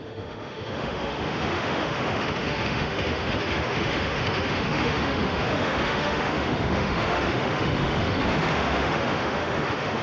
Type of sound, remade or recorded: remade